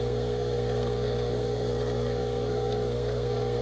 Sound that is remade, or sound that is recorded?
remade